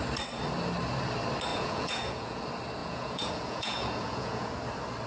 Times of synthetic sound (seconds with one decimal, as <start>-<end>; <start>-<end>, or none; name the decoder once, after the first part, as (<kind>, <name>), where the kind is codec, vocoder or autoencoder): 1.5-2.4 (vocoder, Vocos); 2.8-4.5

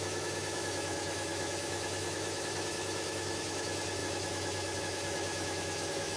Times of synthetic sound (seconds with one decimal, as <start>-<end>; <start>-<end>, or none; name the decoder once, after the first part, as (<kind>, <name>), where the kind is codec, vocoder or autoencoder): 0.0-6.2 (autoencoder, DAC-VAE)

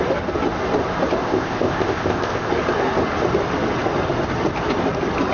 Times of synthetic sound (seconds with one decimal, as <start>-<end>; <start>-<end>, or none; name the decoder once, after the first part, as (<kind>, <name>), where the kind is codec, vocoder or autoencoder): 1.2-2.5 (codec, ZipCodec)

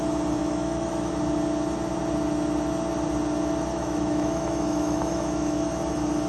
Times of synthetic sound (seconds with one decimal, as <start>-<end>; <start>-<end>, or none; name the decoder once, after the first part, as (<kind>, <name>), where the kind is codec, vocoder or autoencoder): 0.4-1.1 (autoencoder, DAC-VAE); 3.7-5.7